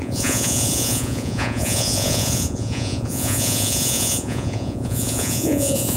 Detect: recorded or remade remade